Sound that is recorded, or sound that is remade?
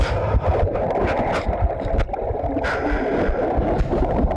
recorded